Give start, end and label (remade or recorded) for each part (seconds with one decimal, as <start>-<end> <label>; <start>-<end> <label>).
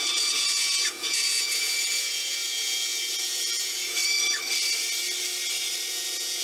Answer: 0.0-4.0 remade; 4.0-5.9 recorded; 5.9-6.4 remade